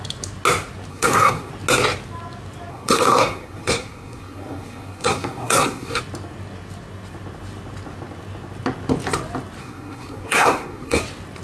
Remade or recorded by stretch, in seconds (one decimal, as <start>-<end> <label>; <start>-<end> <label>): 0.0-0.9 recorded; 0.9-1.5 remade; 1.5-2.7 recorded; 2.7-6.0 remade; 6.0-9.6 recorded; 9.6-11.0 remade; 11.0-11.4 recorded